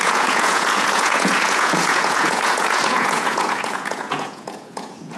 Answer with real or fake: fake